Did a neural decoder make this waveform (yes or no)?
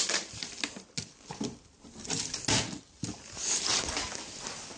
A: no